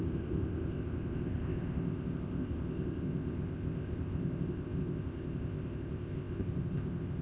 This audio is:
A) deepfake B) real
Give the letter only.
A